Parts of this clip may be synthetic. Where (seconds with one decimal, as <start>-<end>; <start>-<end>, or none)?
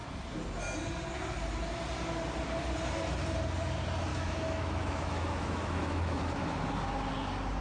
4.1-6.7